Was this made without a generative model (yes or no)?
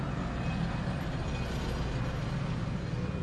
yes